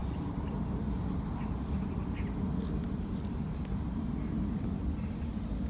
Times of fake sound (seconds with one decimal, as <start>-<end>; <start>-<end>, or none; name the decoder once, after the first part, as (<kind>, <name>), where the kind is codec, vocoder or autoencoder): none